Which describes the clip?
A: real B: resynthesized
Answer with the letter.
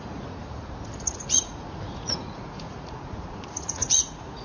B